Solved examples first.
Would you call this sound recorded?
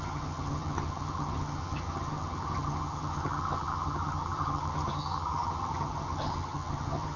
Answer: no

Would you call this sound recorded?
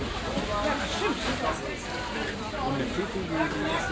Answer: yes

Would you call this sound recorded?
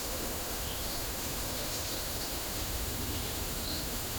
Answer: no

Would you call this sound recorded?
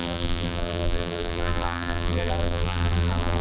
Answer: no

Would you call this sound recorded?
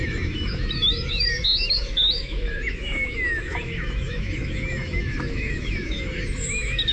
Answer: no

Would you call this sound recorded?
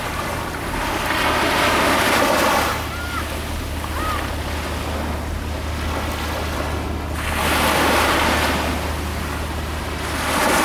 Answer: yes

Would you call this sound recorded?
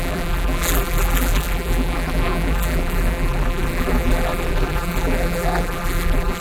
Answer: no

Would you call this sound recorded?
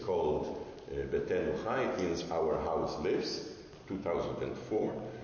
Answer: yes